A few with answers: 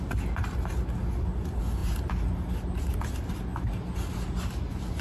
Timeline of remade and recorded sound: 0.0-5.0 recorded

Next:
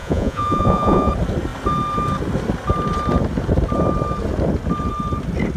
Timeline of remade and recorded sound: 0.0-1.1 remade; 1.1-5.6 recorded

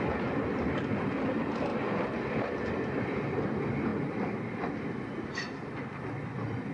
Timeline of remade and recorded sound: 0.0-6.7 recorded

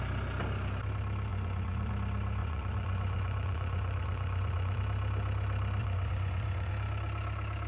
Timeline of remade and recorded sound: 0.0-1.3 recorded; 1.3-1.9 remade; 1.9-2.4 recorded; 2.4-4.8 remade; 4.8-5.8 recorded; 5.8-6.7 remade; 6.7-7.7 recorded

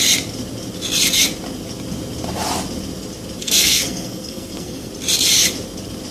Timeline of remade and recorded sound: 0.0-3.4 recorded; 3.4-4.9 remade; 4.9-6.1 recorded

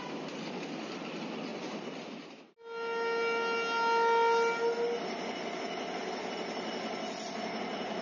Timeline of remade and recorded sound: 0.0-8.0 recorded

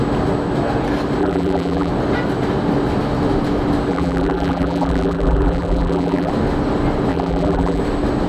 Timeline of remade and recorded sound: 0.0-1.2 recorded; 1.2-1.9 remade; 1.9-3.9 recorded; 3.9-6.3 remade; 6.3-7.1 recorded; 7.1-7.8 remade; 7.8-8.3 recorded